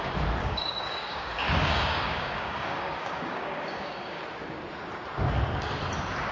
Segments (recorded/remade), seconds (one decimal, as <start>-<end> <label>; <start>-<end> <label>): 0.0-0.4 recorded; 0.4-4.2 remade; 4.2-6.3 recorded